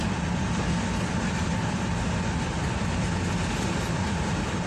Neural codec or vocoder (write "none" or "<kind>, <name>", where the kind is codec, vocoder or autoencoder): none